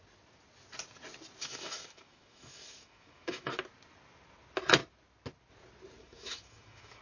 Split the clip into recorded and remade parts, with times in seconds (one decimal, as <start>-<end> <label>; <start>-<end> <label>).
0.0-1.4 recorded; 1.4-3.5 remade; 3.5-6.0 recorded; 6.0-7.0 remade